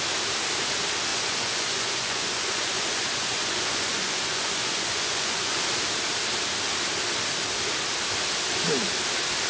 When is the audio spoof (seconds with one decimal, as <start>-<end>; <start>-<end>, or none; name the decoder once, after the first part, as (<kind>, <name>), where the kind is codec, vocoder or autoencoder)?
1.1-5.6 (vocoder, Vocos)